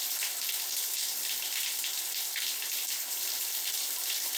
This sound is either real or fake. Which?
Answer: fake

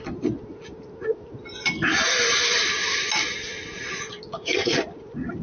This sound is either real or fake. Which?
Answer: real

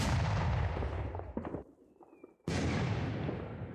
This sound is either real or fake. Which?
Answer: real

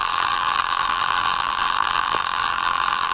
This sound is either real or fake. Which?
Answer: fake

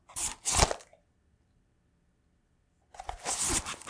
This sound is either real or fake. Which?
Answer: real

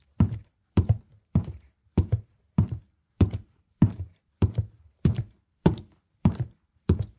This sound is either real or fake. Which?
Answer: fake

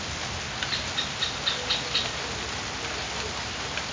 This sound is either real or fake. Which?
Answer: real